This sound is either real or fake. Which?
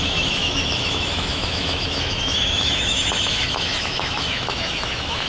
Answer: fake